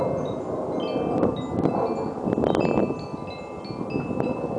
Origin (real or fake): real